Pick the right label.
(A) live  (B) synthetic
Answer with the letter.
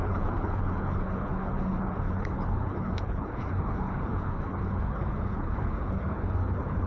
B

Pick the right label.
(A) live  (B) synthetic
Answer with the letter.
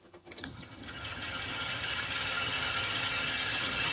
B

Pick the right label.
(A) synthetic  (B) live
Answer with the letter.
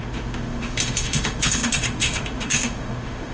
A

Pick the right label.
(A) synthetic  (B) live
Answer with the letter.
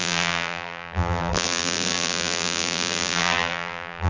A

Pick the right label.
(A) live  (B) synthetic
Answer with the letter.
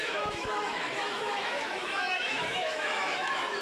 B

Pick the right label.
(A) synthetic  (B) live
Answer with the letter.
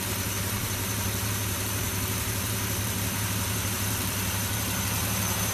A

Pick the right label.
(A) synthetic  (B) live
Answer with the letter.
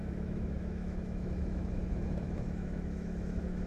A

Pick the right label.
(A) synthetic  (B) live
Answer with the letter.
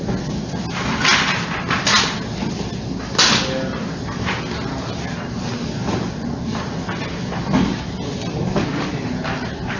B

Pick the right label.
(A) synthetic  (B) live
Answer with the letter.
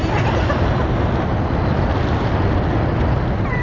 B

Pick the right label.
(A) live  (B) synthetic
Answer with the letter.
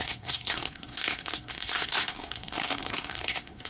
B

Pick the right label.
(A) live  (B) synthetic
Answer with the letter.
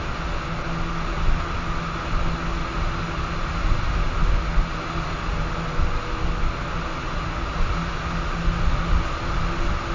A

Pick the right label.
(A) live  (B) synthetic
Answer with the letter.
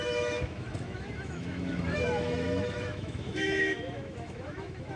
B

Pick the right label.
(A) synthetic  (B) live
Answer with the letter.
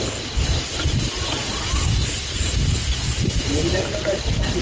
B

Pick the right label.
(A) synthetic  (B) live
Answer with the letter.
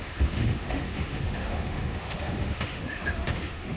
A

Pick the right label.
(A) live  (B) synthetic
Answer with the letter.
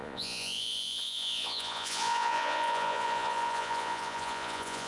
B